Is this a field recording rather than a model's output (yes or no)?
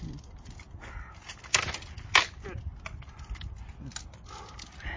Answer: yes